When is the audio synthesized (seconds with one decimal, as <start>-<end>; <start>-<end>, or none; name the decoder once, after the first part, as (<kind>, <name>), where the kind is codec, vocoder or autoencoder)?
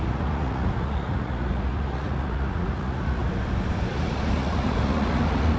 0.0-3.2 (vocoder, Vocos); 3.9-5.6